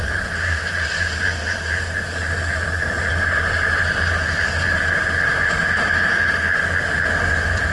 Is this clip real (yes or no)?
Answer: yes